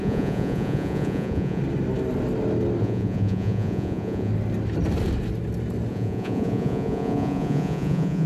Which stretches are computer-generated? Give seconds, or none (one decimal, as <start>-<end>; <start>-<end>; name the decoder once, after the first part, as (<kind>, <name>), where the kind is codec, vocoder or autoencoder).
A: 0.0-1.6 (vocoder, Vocos); 2.8-4.3; 5.9-8.3